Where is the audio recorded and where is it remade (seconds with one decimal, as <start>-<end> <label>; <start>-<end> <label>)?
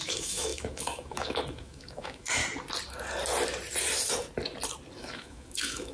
0.0-2.4 remade; 2.4-5.0 recorded; 5.0-5.9 remade